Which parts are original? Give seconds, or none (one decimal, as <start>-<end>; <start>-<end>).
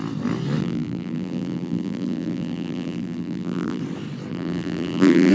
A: 0.0-0.6; 3.8-4.3